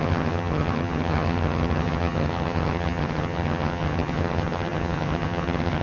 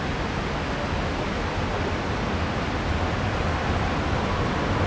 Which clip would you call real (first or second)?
second